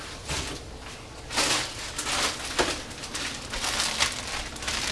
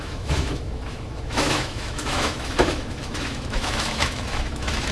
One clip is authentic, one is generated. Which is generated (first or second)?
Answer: second